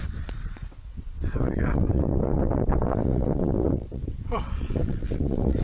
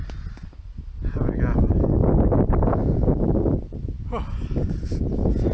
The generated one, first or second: first